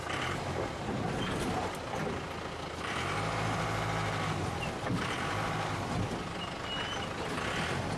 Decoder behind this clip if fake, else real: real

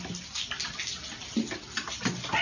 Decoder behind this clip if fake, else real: real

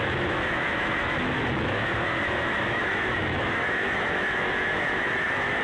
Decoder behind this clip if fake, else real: fake, autoencoder, DAC-VAE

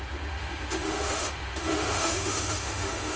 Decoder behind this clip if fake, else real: fake, autoencoder, DAC-VAE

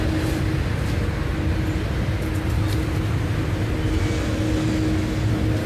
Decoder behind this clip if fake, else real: real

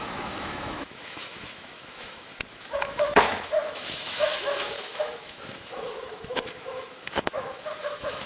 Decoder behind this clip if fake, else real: fake, autoencoder, DAC-VAE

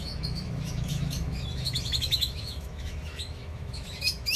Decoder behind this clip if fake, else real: fake, autoencoder, DAC-VAE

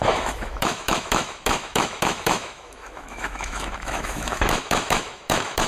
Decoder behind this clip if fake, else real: fake, autoencoder, DAC-VAE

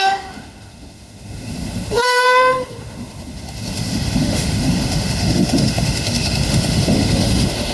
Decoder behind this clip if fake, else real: fake, autoencoder, DAC-VAE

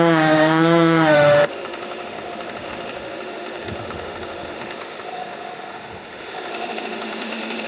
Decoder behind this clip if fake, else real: fake, autoencoder, DAC-VAE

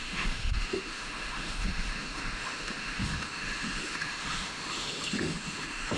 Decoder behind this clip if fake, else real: fake, autoencoder, DAC-VAE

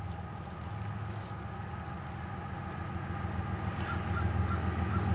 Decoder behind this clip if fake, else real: real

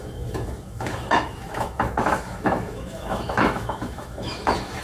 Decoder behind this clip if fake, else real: fake, autoencoder, DAC-VAE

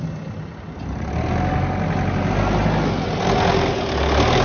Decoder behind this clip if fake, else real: real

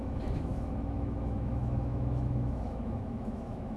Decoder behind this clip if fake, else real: fake, autoencoder, DAC-VAE